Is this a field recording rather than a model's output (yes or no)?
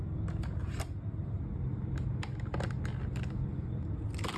yes